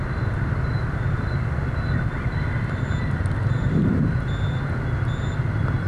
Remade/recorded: recorded